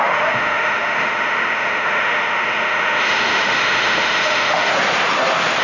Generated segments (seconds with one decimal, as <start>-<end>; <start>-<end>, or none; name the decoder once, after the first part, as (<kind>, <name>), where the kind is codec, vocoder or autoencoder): 0.0-4.7 (autoencoder, DAC-VAE)